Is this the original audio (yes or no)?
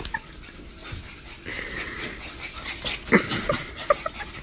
yes